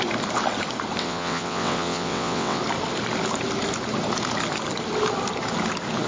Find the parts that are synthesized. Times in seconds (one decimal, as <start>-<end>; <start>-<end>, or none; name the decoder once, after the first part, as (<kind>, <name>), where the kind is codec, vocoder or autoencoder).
1.0-2.6 (vocoder, WaveNeXt)